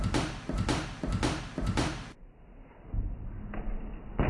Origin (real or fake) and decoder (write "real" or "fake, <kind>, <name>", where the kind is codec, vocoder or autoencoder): real